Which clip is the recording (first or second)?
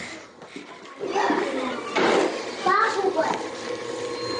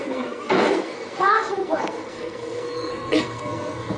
first